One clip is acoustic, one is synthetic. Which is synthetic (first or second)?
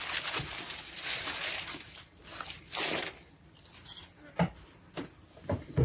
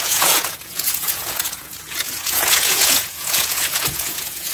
second